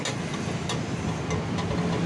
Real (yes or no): yes